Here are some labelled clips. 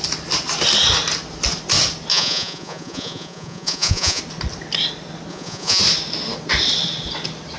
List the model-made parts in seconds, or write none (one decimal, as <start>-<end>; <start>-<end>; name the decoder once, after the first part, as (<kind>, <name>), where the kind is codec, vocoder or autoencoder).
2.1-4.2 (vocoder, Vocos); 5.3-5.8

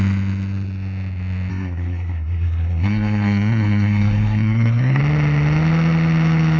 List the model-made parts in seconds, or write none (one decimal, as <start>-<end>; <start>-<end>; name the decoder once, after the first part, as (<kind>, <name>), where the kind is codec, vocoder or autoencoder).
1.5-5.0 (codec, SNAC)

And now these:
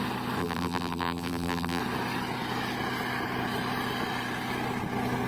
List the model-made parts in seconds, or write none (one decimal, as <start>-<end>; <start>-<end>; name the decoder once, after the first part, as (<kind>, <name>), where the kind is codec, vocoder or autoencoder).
0.4-1.8 (vocoder, BigVGAN v2)